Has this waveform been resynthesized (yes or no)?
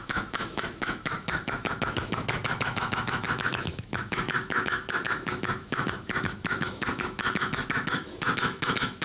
yes